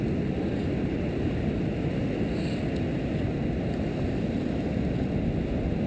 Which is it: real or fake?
real